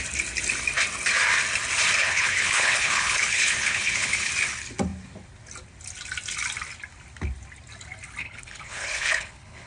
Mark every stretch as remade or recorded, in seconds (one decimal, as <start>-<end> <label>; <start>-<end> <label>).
0.0-2.0 recorded; 2.0-4.3 remade; 4.3-8.2 recorded; 8.2-9.7 remade